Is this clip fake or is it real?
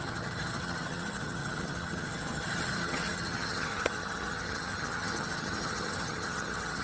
fake